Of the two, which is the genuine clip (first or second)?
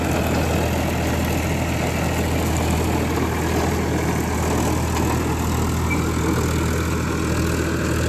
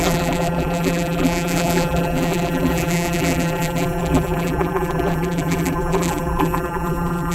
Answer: first